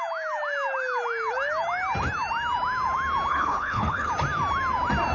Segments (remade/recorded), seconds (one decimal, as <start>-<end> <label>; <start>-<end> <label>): 0.0-3.3 recorded; 3.3-4.1 remade; 4.1-5.1 recorded